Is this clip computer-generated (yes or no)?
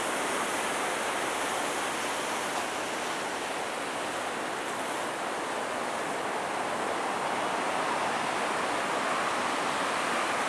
no